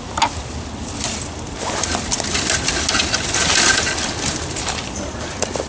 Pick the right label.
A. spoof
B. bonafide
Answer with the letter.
B